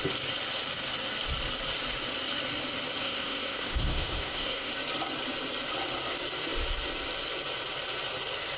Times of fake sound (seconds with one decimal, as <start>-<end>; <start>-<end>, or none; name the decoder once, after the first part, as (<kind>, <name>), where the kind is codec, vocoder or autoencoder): 3.0-4.7 (codec, SNAC)